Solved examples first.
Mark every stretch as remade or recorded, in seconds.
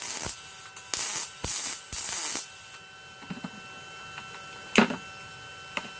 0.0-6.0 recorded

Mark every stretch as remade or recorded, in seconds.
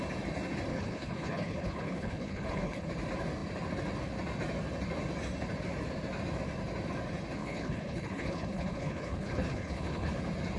0.0-0.7 recorded; 0.7-2.9 remade; 2.9-7.4 recorded; 7.4-10.1 remade; 10.1-10.6 recorded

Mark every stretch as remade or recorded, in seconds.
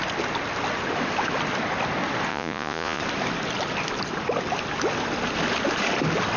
0.0-2.3 recorded; 2.3-3.0 remade; 3.0-6.4 recorded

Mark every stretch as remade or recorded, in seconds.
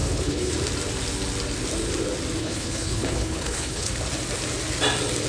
0.0-0.5 remade; 0.5-2.4 recorded; 2.4-3.9 remade; 3.9-5.3 recorded